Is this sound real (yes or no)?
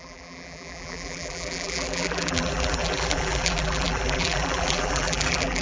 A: no